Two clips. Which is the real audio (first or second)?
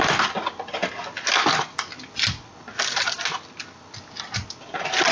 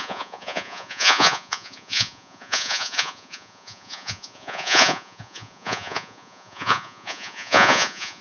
first